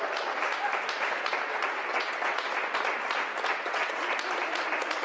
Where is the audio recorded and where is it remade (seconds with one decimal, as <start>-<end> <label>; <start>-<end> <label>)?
0.0-1.9 recorded; 1.9-2.5 remade; 2.5-3.5 recorded; 3.5-4.0 remade; 4.0-5.0 recorded